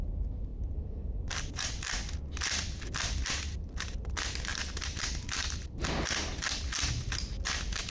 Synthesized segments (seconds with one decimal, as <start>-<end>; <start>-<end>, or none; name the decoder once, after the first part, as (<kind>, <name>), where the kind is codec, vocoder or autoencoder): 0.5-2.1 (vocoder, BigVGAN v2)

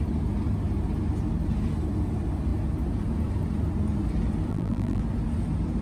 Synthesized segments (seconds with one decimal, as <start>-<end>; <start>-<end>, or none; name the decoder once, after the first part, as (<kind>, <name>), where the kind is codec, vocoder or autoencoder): 4.5-5.0 (vocoder, BigVGAN v2)

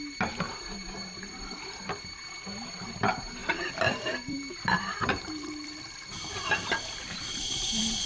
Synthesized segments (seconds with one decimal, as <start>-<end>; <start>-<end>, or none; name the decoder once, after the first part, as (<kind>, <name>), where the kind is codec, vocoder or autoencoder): 0.0-8.1 (vocoder, BigVGAN v2)